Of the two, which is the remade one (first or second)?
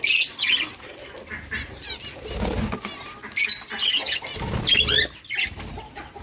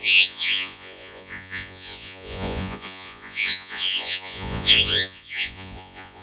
second